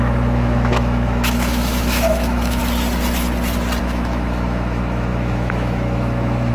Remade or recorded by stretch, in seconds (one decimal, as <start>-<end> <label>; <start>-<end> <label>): 0.0-2.6 remade; 2.6-3.8 recorded; 3.8-6.5 remade